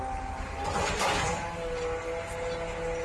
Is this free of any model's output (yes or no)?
yes